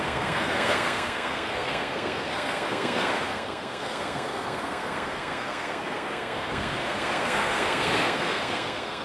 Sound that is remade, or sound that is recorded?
remade